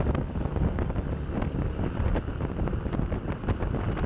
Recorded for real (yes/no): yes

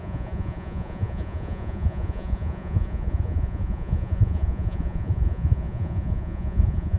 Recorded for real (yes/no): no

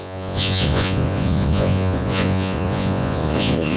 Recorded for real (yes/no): no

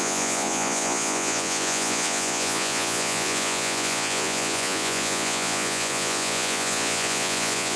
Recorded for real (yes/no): no